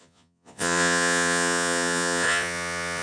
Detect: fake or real fake